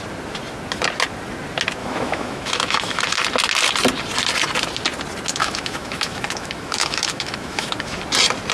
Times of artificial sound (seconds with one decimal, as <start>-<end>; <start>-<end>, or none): 1.8-3.0; 5.3-8.0